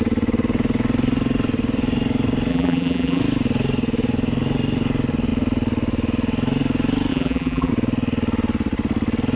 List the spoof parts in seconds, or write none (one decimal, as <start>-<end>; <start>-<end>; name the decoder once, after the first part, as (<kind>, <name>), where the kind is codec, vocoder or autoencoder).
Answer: 2.5-3.2 (vocoder, BigVGAN v2); 7.1-7.7